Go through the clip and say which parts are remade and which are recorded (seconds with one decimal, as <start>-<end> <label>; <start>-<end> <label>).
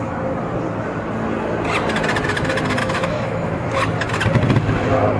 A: 0.0-2.8 recorded; 2.8-3.7 remade; 3.7-5.2 recorded